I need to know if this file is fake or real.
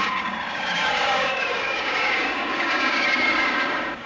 fake